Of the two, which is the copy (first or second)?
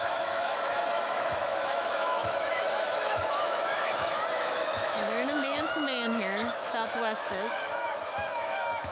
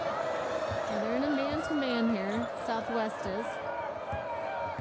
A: first